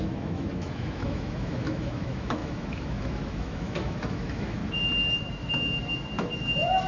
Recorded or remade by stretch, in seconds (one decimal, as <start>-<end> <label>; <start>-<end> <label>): 0.0-4.6 remade; 4.6-5.2 recorded; 5.2-6.9 remade